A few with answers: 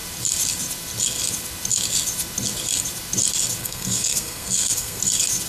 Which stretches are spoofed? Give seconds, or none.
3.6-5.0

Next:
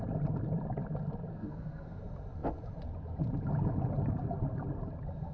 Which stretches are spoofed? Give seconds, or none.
1.3-2.0

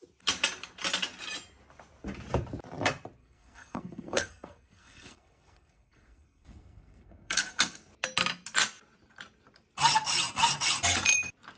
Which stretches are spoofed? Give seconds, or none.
3.2-7.9

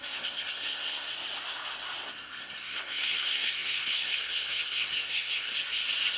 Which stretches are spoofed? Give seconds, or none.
0.0-1.1; 2.1-5.5

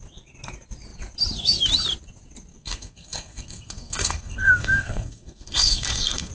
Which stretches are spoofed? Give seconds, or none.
2.5-6.3

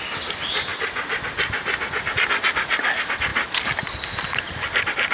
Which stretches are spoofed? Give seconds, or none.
none

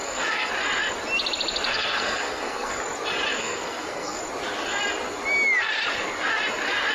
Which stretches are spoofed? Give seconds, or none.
0.0-0.5; 1.7-2.8; 3.4-4.2